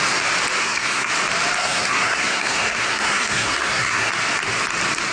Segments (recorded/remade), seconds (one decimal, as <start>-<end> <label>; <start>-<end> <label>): 0.0-0.6 recorded; 0.6-1.1 remade; 1.1-1.6 recorded; 1.6-4.1 remade; 4.1-5.1 recorded